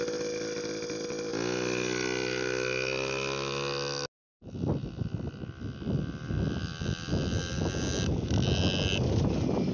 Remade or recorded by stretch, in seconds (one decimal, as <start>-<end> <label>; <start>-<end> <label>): 0.0-9.7 recorded